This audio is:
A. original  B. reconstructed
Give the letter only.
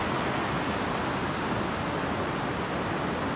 A